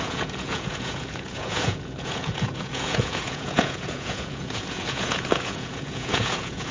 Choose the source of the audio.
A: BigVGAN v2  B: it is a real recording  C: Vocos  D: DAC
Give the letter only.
C